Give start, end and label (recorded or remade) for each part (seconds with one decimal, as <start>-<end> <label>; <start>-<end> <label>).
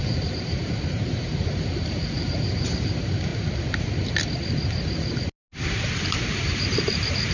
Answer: 0.0-3.3 remade; 3.3-5.7 recorded; 5.7-7.3 remade